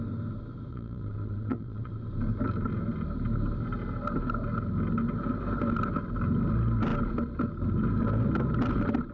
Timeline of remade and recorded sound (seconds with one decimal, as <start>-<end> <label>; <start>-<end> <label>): 0.0-0.7 recorded; 0.7-1.9 remade; 1.9-9.1 recorded